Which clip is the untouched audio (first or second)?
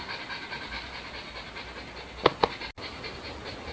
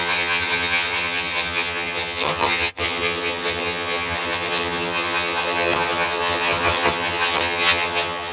first